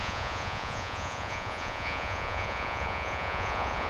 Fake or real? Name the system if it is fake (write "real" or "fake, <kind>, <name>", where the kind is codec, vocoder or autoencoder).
fake, vocoder, Vocos